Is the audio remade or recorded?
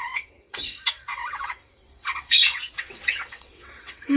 remade